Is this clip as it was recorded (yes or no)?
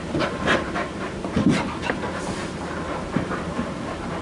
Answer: no